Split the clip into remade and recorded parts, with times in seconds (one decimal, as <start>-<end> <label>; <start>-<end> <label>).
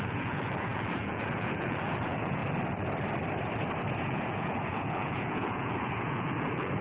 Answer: 0.0-2.4 remade; 2.4-4.0 recorded; 4.0-6.8 remade